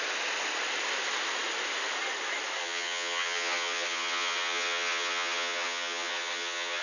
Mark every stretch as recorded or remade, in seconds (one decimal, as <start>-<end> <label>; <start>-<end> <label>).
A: 0.0-2.6 recorded; 2.6-6.8 remade